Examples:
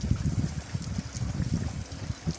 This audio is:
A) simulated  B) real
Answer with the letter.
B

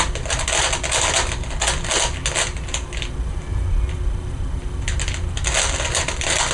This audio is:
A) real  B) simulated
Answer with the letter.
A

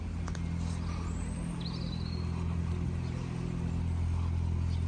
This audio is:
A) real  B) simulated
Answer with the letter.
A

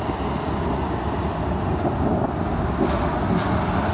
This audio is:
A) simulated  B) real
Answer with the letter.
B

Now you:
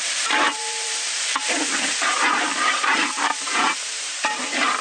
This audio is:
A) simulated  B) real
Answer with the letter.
A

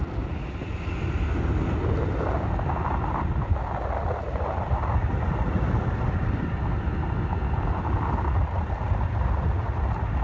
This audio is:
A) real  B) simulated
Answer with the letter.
A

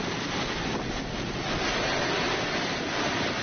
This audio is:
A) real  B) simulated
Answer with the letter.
A